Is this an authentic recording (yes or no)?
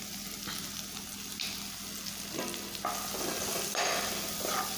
yes